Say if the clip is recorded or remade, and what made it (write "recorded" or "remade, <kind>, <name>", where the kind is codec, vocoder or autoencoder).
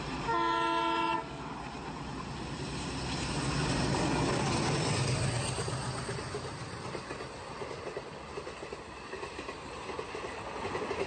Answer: recorded